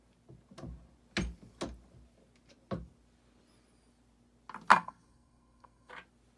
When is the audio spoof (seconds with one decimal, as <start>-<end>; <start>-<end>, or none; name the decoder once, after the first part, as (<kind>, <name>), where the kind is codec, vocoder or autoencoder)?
4.7-5.9 (codec, SNAC)